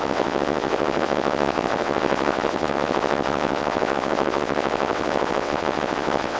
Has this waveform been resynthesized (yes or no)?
yes